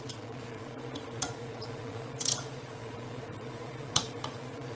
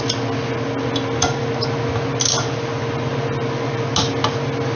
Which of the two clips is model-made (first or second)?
first